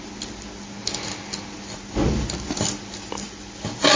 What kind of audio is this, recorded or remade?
recorded